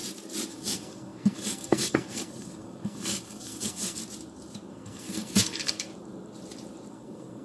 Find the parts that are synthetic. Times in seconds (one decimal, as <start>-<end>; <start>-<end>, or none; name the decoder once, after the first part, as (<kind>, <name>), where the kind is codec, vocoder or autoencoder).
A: 0.5-4.0 (codec, SNAC); 4.7-5.9; 6.9-7.4